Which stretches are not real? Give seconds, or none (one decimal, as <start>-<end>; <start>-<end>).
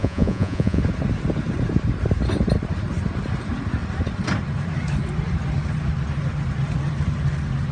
0.0-0.8